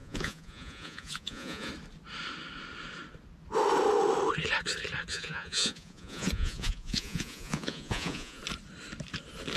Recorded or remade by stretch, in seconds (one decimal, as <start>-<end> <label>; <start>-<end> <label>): 0.0-1.7 remade; 1.7-5.1 recorded; 5.1-8.4 remade; 8.4-9.6 recorded